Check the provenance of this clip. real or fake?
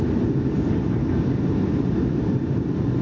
real